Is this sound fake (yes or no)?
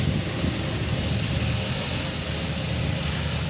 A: no